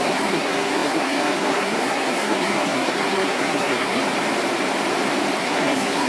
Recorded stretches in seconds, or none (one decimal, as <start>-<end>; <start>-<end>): 4.0-5.4